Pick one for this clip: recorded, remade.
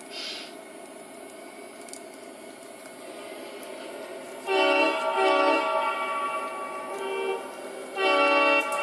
recorded